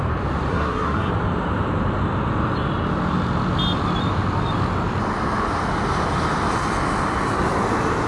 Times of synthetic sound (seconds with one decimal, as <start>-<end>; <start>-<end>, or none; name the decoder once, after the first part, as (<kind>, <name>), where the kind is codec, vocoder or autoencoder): 0.5-1.1 (codec, SNAC)